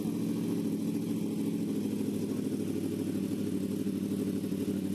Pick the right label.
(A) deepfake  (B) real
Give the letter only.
B